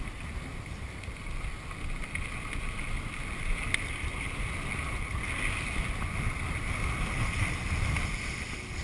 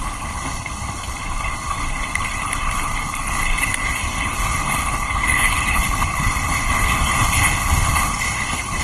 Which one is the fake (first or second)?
second